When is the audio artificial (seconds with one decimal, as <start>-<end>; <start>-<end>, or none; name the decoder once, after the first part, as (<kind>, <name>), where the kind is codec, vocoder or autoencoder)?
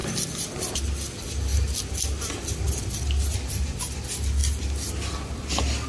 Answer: none